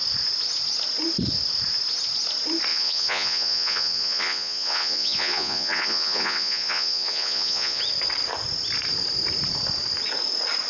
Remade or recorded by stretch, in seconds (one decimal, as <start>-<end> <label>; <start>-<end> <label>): 0.0-2.7 recorded; 2.7-7.8 remade; 7.8-10.7 recorded